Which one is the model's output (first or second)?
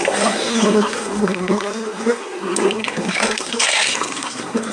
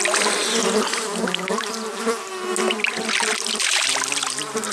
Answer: first